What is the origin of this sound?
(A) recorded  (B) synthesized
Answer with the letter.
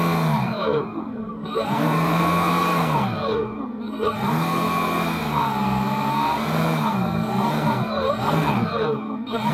B